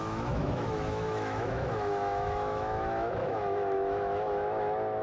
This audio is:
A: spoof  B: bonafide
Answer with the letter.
A